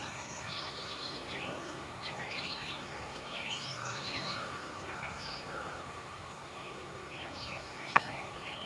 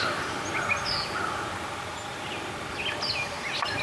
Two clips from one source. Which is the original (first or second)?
second